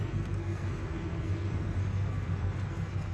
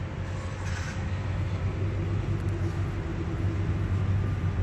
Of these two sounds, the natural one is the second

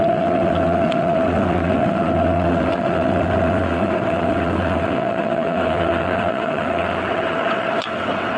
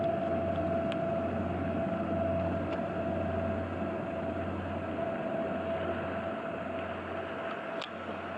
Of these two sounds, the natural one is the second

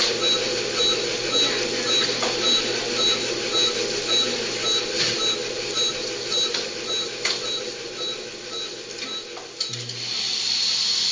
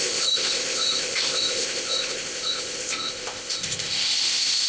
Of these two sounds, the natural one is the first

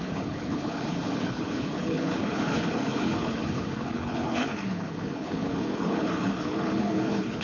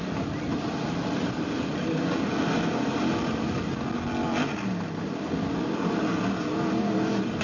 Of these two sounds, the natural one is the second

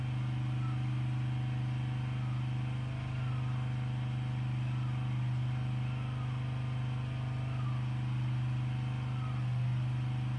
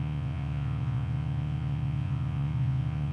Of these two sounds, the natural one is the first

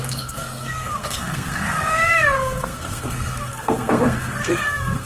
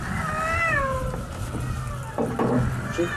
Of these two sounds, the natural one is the second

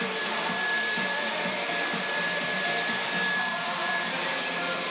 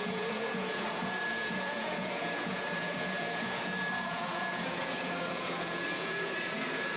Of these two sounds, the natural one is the first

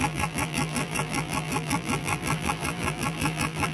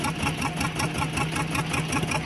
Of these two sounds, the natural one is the second